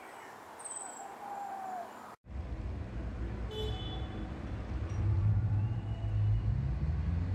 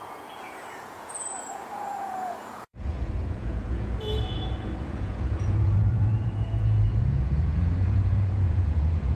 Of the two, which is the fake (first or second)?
second